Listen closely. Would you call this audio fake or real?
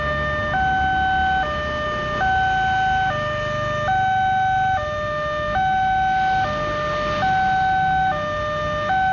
real